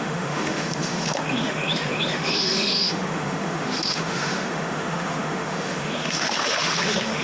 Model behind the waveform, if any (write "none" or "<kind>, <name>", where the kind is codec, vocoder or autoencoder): autoencoder, DAC-VAE